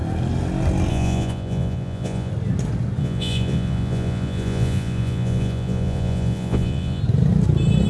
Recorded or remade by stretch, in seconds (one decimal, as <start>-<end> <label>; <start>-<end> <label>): 0.0-0.9 recorded; 0.9-2.3 remade; 2.3-3.0 recorded; 3.0-7.0 remade; 7.0-7.9 recorded